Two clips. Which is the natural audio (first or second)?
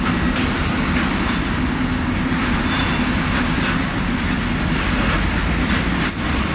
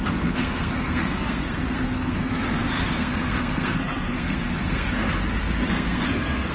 first